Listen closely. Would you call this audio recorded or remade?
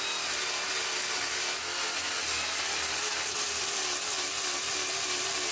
recorded